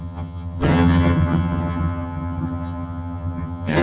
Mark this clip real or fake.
fake